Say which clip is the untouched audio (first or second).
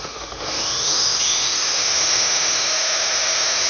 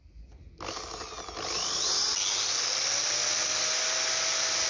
second